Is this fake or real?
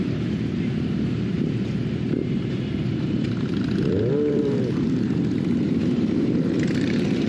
fake